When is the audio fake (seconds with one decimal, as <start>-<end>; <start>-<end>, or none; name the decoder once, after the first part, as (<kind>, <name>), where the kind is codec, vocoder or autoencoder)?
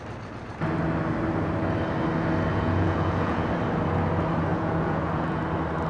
2.5-3.5 (vocoder, Vocos); 4.5-5.4